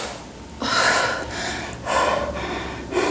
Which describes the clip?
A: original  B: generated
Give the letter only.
A